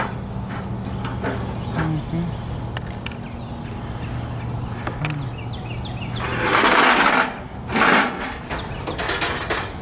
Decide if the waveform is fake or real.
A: real